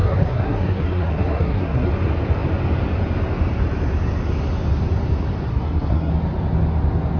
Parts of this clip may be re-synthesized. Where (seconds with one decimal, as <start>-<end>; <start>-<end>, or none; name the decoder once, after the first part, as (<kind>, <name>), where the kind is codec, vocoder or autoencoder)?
0.0-1.9 (codec, SNAC); 5.5-6.1